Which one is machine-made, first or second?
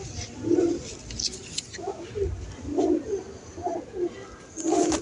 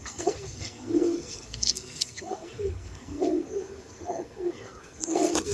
second